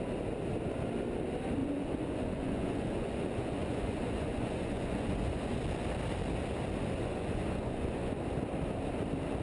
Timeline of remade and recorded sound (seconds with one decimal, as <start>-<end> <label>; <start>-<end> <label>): 0.0-1.6 recorded; 1.6-5.6 remade; 5.6-7.0 recorded; 7.0-8.2 remade; 8.2-9.4 recorded